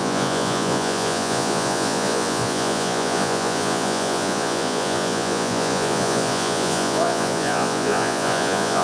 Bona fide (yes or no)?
no